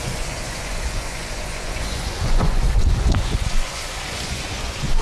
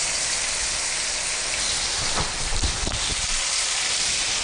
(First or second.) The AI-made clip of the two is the first